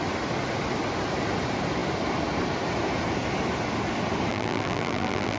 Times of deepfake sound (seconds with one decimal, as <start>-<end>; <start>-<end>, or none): 4.3-5.4